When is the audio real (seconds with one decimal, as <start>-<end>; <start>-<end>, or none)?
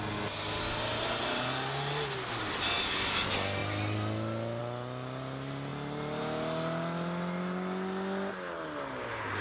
0.0-9.4